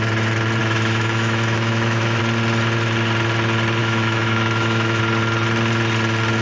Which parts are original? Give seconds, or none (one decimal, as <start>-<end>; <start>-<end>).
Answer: 0.0-0.6; 2.2-3.8; 5.0-6.4